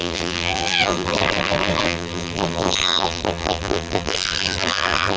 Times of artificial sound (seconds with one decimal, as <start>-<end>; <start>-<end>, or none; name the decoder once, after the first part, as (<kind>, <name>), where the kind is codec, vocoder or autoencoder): 0.0-5.2 (vocoder, BigVGAN v2)